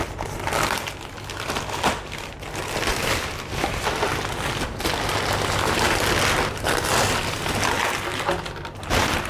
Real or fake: real